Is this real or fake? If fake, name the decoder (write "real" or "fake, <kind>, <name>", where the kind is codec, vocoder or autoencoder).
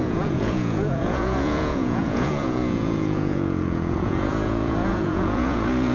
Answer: fake, vocoder, Vocos